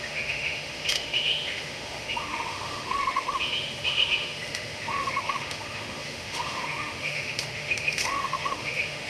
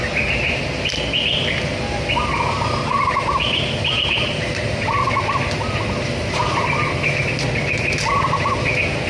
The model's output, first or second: first